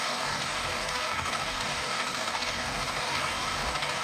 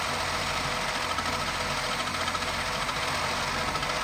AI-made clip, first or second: first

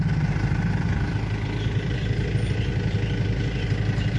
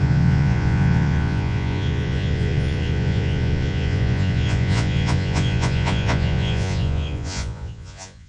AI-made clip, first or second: second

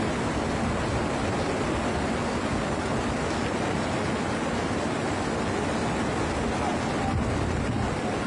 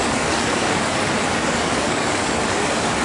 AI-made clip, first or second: second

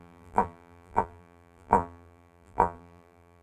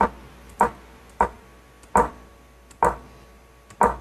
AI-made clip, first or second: first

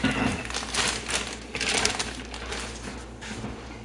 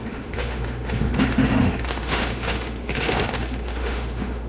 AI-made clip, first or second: second